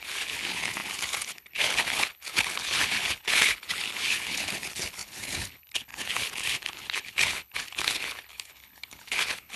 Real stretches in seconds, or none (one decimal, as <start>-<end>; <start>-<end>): none